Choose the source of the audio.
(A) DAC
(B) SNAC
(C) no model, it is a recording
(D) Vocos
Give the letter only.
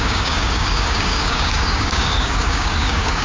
A